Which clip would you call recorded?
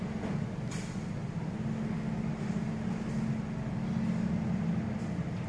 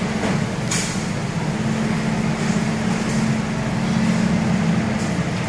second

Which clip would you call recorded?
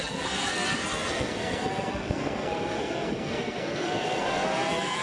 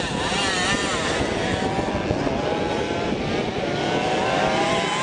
second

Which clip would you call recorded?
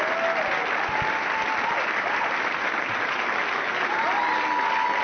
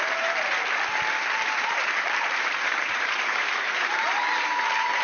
first